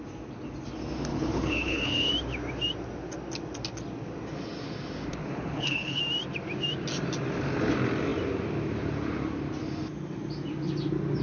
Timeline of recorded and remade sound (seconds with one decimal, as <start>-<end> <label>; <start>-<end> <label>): 0.0-1.1 recorded; 1.1-2.1 remade; 2.1-5.2 recorded; 5.2-6.0 remade; 6.0-11.2 recorded